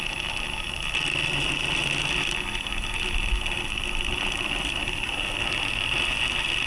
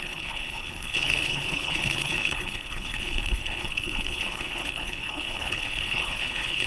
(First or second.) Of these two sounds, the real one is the first